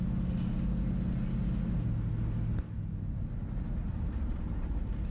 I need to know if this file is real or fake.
real